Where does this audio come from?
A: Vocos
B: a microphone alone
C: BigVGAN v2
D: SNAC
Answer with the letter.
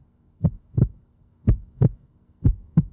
D